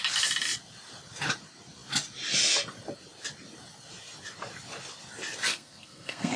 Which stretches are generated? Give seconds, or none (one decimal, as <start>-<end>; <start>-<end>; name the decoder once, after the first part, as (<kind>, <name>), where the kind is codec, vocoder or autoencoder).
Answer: 5.5-6.4 (codec, SNAC)